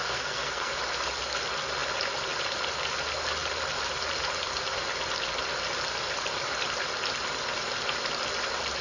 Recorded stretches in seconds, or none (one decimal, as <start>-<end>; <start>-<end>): 0.8-8.8